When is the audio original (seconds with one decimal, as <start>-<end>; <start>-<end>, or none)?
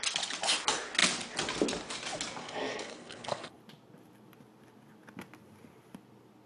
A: 0.0-2.4; 3.6-6.5